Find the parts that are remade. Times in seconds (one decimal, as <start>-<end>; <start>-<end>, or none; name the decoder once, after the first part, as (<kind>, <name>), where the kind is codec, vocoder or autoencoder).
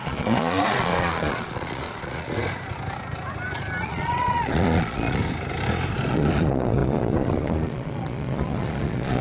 0.0-2.4 (vocoder, Vocos); 3.8-5.2; 6.1-9.2